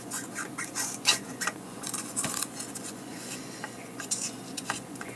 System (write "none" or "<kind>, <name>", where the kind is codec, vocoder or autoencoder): vocoder, Vocos